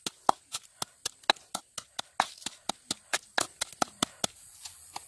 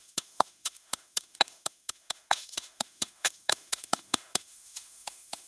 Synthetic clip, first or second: second